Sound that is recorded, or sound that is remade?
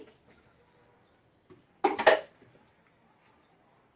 recorded